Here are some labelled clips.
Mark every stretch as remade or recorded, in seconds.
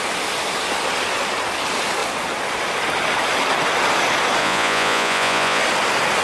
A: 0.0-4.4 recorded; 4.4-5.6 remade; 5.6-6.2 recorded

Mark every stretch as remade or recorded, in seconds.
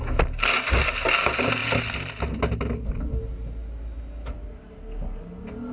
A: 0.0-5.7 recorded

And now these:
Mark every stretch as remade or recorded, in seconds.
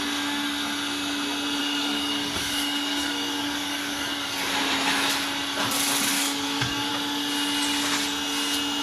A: 0.0-1.6 recorded; 1.6-4.5 remade; 4.5-6.1 recorded; 6.1-6.9 remade; 6.9-8.8 recorded